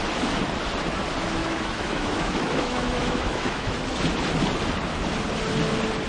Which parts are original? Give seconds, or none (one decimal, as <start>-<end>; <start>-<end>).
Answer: 0.0-1.4; 3.8-6.1

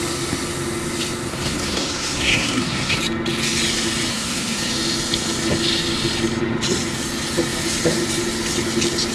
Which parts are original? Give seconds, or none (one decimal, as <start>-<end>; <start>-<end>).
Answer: 0.0-1.3; 3.0-4.1; 4.7-9.1

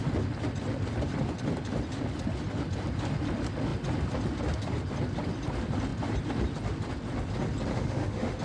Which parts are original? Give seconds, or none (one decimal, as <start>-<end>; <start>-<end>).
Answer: 0.0-7.7

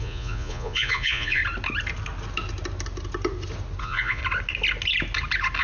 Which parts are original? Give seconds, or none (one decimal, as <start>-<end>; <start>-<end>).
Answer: 1.4-3.8; 4.2-5.6

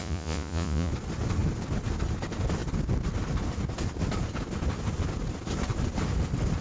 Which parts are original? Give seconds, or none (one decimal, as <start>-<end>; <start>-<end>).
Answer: 0.9-6.6

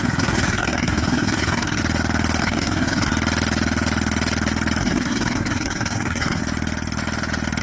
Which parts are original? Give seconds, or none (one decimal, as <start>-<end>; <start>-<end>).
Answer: 1.8-2.4; 3.1-4.8; 6.4-7.6